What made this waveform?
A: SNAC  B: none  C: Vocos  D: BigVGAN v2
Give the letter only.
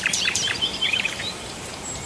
D